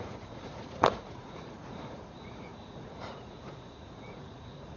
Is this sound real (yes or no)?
no